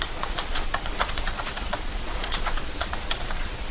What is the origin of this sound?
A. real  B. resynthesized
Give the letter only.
B